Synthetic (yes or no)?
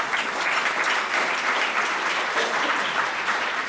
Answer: yes